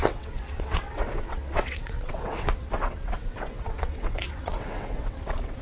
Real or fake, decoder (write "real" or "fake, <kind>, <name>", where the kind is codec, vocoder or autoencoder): fake, vocoder, WaveNeXt